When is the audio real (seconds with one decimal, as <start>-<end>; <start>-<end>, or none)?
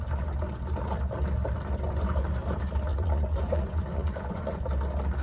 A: 0.0-2.9; 4.6-5.2